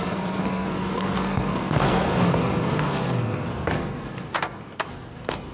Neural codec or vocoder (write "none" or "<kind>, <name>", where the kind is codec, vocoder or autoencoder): codec, SNAC